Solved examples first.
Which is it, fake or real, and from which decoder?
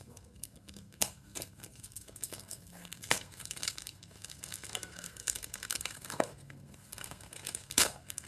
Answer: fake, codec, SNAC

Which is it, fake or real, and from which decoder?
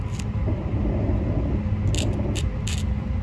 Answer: real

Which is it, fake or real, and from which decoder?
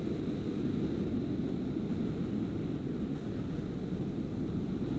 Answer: real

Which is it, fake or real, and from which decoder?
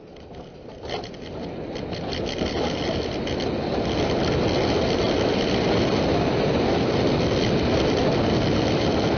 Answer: real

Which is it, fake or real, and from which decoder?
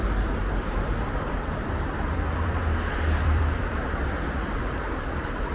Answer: fake, vocoder, BigVGAN v2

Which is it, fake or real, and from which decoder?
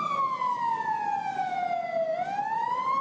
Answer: real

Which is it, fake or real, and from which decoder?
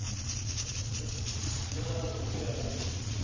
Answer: fake, vocoder, Vocos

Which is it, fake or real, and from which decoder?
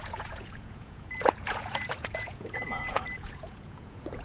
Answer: fake, vocoder, Vocos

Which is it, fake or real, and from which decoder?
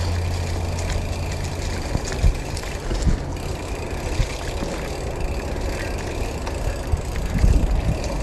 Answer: real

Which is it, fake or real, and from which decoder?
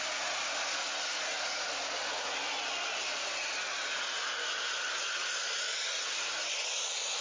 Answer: real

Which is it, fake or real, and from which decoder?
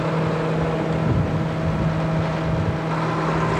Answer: real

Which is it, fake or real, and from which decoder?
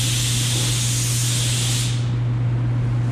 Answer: real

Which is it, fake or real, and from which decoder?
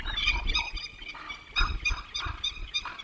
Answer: fake, vocoder, BigVGAN v2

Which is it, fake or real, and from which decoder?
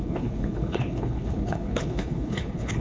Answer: fake, codec, HILCodec